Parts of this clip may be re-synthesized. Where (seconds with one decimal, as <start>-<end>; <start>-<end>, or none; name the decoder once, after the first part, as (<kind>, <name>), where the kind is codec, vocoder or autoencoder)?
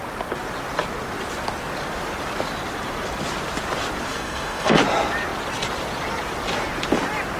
4.1-4.8 (codec, SNAC)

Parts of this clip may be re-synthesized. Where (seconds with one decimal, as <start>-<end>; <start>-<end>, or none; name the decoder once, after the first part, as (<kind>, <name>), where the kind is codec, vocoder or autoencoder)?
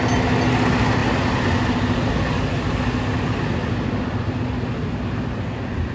none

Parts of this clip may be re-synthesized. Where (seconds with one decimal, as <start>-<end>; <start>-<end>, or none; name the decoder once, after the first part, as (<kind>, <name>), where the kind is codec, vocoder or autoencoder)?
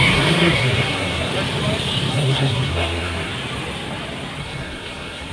0.0-1.3 (codec, SNAC); 2.1-3.3; 4.4-5.3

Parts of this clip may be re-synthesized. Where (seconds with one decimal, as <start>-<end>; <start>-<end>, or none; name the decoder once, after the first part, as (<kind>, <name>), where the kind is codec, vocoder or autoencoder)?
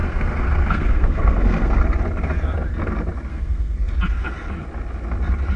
0.0-1.8 (codec, SNAC); 3.3-3.9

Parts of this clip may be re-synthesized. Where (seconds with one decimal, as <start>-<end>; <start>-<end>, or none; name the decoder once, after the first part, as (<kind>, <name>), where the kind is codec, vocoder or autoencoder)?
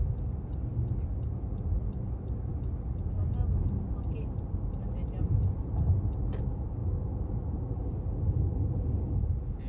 none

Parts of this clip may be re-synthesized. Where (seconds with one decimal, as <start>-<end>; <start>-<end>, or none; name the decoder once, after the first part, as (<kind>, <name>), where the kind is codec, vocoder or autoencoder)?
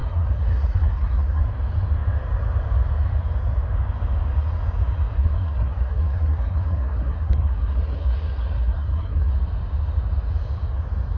0.0-1.4 (codec, SNAC); 5.2-9.3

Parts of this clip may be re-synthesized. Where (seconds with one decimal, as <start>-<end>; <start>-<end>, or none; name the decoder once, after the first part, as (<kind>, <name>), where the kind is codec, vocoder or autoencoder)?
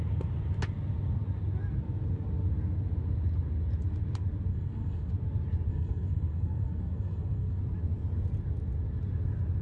4.5-5.1 (codec, SNAC); 5.7-7.6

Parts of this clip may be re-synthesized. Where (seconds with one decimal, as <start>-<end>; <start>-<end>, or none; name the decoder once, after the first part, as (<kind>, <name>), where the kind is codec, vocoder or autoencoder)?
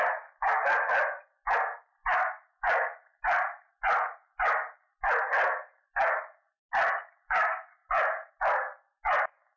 none